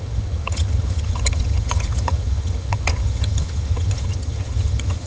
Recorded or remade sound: remade